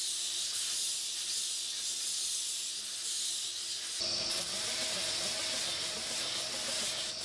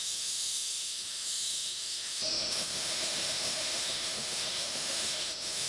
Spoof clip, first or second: second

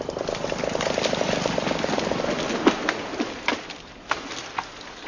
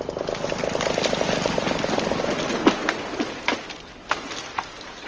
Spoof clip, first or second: first